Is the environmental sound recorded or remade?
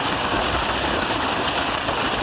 recorded